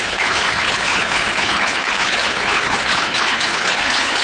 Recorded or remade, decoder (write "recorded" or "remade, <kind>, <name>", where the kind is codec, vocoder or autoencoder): remade, codec, HILCodec